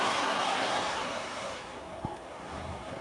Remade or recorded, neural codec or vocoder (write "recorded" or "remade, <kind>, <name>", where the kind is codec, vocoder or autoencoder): remade, codec, SNAC